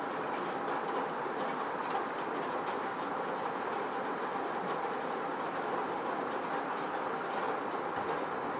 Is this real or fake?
real